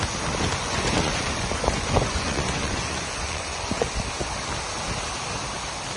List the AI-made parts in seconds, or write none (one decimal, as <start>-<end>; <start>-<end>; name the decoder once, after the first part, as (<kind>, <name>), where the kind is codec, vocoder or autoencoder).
0.6-4.0 (vocoder, Vocos)